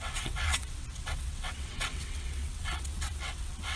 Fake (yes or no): yes